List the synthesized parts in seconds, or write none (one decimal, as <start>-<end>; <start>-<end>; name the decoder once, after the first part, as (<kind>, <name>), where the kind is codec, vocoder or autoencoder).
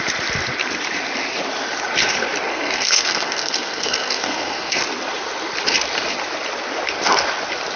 2.5-4.8 (codec, SNAC)